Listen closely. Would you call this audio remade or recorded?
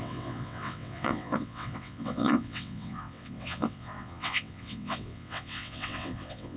remade